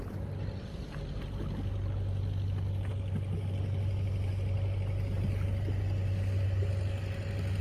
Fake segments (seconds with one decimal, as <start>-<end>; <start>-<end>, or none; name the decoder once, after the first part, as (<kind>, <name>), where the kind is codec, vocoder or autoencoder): none

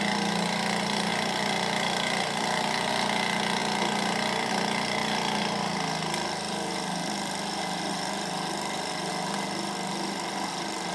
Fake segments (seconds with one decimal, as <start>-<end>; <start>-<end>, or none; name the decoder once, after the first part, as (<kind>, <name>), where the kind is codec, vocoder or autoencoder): 1.1-2.9 (vocoder, BigVGAN v2); 3.6-4.5; 5.0-9.1